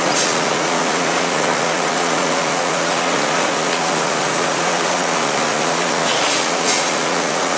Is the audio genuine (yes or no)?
no